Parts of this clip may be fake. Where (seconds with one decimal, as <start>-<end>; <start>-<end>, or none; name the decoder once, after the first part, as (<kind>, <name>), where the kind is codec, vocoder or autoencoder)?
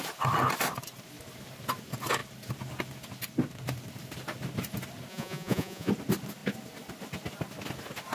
5.1-5.9 (vocoder, Vocos)